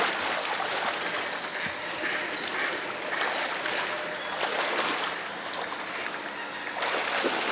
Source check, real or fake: real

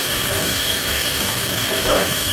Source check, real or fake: fake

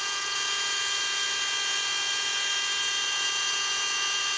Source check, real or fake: fake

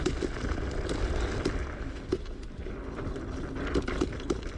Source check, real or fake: real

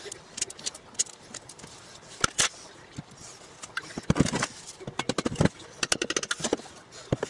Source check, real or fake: real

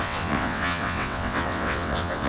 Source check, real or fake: fake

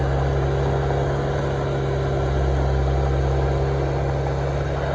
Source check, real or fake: real